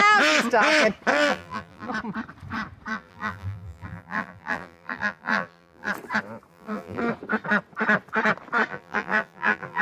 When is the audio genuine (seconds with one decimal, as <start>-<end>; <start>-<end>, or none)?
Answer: 0.0-1.1; 1.9-2.9; 5.9-6.5; 7.0-8.7

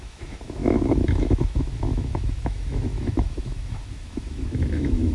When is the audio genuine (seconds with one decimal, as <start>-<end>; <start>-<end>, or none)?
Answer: none

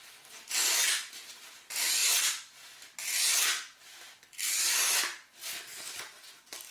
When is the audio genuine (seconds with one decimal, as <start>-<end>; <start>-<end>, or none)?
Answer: 0.0-6.7

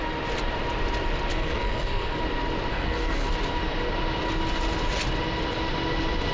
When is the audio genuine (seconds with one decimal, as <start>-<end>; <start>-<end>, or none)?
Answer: 0.0-1.3; 2.2-2.7; 3.3-6.3

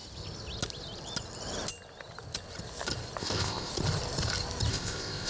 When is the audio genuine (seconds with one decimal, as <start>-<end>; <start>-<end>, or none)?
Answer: 0.0-3.2; 3.7-4.7

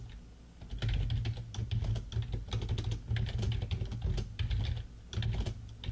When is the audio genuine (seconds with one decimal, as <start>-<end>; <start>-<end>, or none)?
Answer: 0.0-5.9